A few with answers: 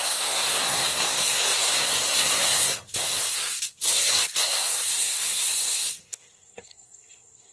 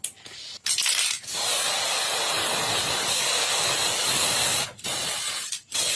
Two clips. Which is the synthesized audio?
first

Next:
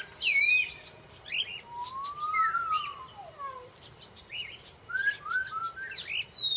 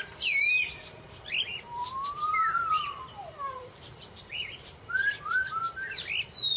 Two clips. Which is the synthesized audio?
second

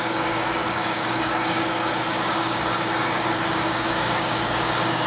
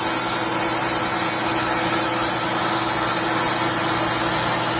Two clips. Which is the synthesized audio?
first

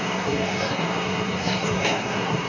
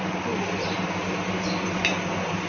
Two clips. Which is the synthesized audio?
first